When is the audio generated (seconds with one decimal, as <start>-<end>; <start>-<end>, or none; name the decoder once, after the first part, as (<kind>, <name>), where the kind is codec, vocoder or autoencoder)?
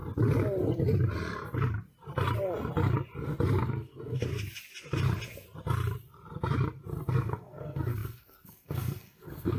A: 3.6-4.3 (codec, SNAC); 7.1-9.6